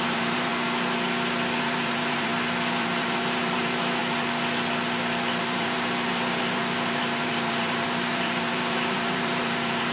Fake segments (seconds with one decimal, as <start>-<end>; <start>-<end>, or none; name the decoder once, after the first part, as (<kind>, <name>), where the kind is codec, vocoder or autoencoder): 0.0-0.5 (vocoder, BigVGAN v2); 1.6-2.3; 2.8-4.0; 5.4-9.9